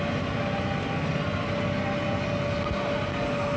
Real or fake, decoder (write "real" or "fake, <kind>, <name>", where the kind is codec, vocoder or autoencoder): real